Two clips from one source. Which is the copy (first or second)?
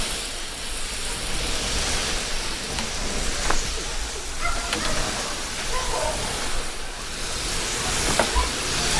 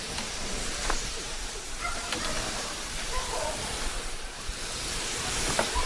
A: second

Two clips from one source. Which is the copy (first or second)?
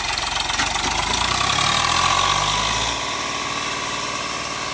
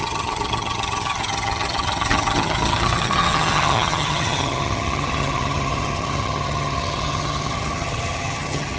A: second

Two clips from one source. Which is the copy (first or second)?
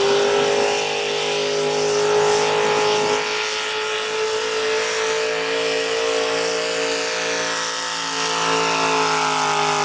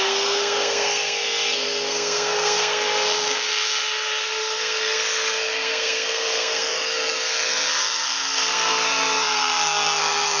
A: second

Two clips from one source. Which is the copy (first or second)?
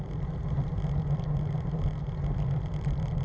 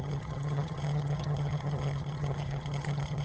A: second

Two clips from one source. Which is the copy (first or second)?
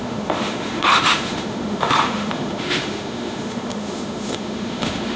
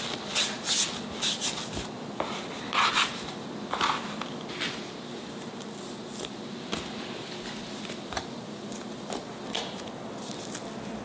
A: first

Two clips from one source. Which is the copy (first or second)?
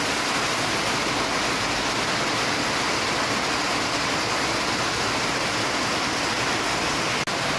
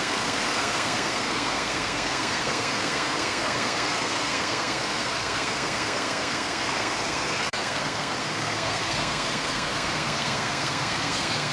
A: second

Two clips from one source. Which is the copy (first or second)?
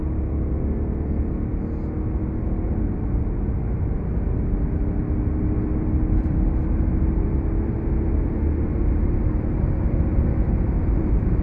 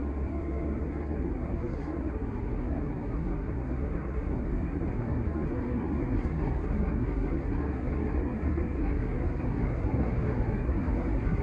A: second